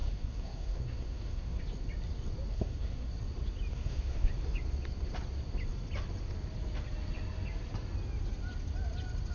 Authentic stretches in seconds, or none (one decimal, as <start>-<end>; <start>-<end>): 1.6-2.5; 3.1-3.7; 4.3-9.3